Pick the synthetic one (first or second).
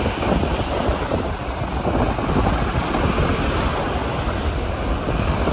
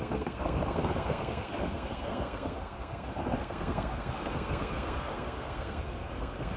second